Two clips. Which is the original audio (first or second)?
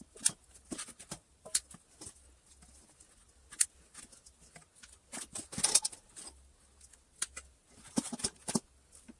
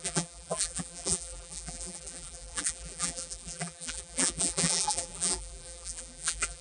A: first